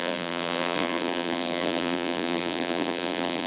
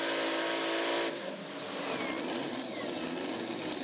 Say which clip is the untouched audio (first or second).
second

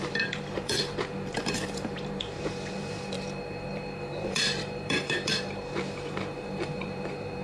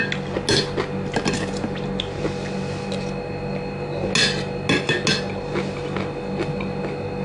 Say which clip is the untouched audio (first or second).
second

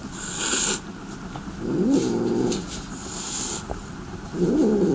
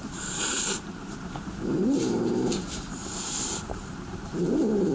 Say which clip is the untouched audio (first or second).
first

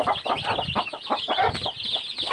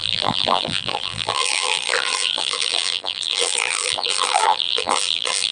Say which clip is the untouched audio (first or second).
first